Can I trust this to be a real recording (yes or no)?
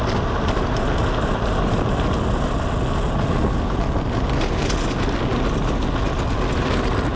yes